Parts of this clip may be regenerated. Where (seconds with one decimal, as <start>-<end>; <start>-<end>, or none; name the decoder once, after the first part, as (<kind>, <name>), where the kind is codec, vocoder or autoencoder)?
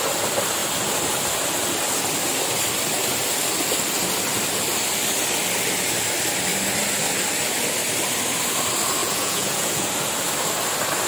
9.0-9.9 (vocoder, Vocos)